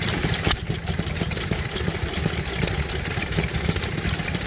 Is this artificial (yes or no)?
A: yes